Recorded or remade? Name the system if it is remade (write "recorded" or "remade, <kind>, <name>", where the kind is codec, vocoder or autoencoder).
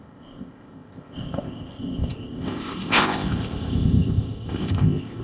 remade, codec, ZipCodec